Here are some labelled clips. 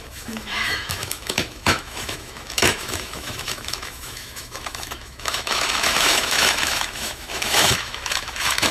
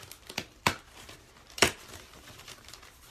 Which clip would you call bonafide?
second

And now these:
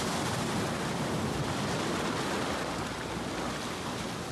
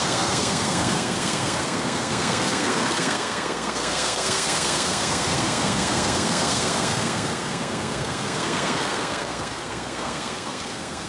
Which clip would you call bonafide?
first